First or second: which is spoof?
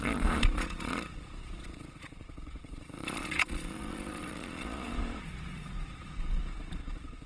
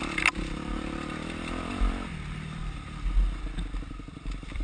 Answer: first